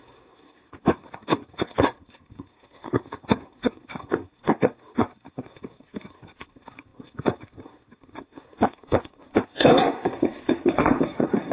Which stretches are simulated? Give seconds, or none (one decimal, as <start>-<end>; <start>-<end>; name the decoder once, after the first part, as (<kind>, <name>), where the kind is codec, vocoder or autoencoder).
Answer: 0.0-11.5 (codec, SNAC)